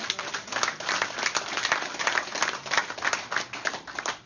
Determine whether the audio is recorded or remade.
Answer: recorded